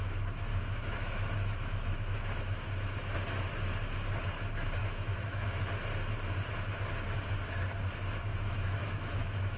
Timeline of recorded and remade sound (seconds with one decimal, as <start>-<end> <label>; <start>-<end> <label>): 0.0-0.5 recorded; 0.5-2.4 remade; 2.4-4.8 recorded; 4.8-5.6 remade; 5.6-8.3 recorded; 8.3-9.6 remade